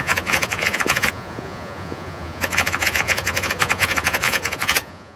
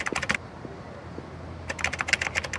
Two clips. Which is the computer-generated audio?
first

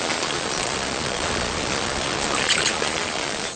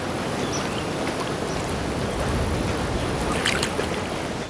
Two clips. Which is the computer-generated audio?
first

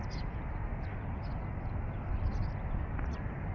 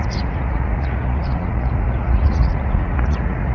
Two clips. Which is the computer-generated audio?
second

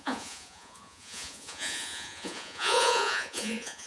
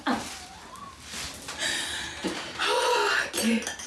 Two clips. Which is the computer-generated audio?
first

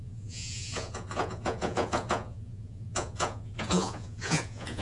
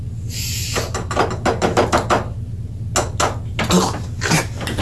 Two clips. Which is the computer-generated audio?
first